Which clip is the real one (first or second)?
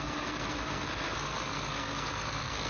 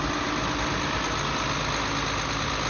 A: second